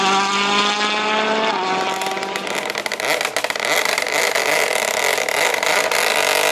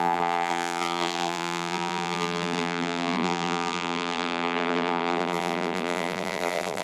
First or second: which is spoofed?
second